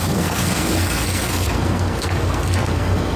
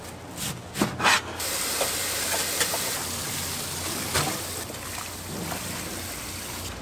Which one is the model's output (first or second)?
first